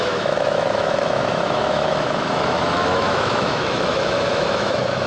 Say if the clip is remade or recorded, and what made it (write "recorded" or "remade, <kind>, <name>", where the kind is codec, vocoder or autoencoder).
remade, autoencoder, DAC-VAE